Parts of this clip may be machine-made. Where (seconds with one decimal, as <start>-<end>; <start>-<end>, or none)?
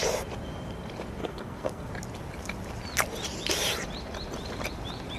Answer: 1.2-1.9